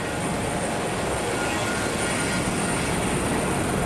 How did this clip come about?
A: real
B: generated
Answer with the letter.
A